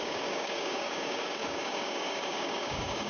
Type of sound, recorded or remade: remade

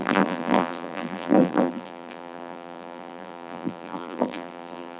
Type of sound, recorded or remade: remade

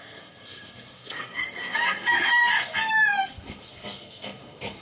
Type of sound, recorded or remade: remade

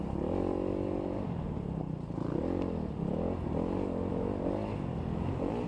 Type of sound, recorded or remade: recorded